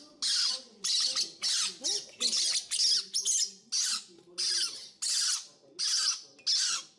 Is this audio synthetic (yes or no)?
no